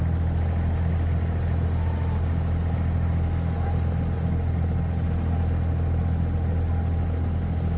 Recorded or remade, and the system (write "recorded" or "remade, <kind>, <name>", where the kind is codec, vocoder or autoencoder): recorded